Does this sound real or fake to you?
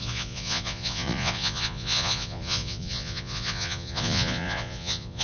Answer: fake